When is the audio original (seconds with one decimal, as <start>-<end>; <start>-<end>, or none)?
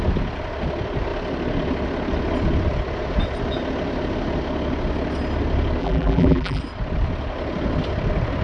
0.0-5.8; 6.6-8.4